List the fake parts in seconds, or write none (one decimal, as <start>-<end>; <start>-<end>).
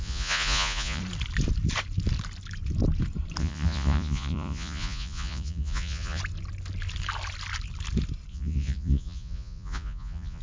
0.0-1.0; 3.4-6.2; 8.3-10.4